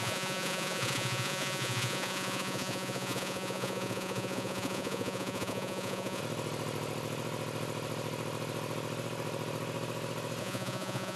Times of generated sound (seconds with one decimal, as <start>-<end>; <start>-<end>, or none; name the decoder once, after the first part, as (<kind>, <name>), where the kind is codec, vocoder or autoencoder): 0.0-6.2 (vocoder, Vocos); 10.4-11.2